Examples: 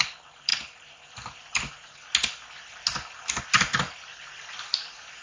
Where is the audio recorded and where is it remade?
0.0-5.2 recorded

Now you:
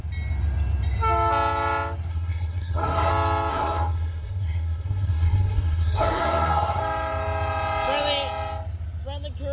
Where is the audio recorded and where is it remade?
0.0-2.1 recorded; 2.1-3.1 remade; 3.1-3.5 recorded; 3.5-6.8 remade; 6.8-9.5 recorded

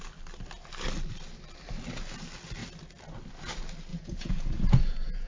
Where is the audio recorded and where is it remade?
0.0-3.9 recorded; 3.9-5.3 remade

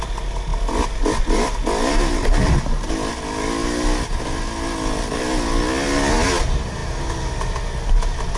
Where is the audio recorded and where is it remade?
0.0-8.4 recorded

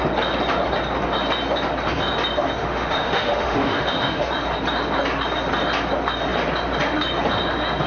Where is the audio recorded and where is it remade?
0.0-2.6 recorded; 2.6-4.2 remade; 4.2-7.9 recorded